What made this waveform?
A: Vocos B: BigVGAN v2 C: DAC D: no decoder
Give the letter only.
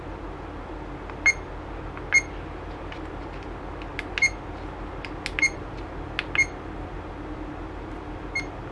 D